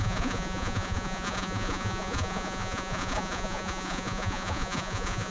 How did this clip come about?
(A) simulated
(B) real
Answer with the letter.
A